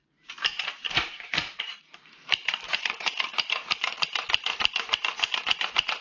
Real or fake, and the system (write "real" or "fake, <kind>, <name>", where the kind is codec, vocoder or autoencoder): fake, vocoder, BigVGAN v2